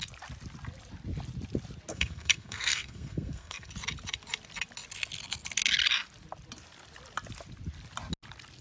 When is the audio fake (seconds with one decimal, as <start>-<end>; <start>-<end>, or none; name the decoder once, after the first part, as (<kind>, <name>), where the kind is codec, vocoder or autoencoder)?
1.9-3.7 (codec, SNAC)